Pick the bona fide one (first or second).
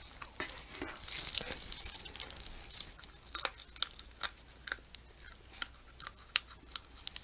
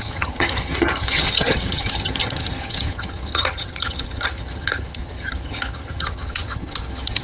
first